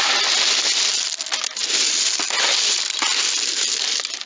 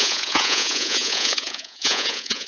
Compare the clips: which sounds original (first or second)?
first